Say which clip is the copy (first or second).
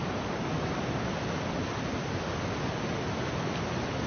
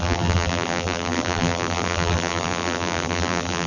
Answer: second